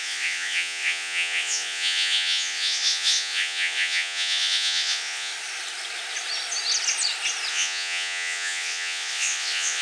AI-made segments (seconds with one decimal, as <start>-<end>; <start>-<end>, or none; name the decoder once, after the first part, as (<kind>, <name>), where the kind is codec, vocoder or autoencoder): 0.0-5.3 (vocoder, Vocos); 7.5-9.8